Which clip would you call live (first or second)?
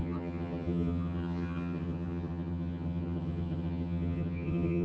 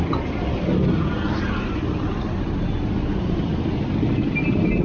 second